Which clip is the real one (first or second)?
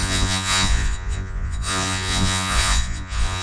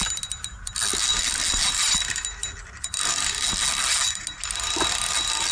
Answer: second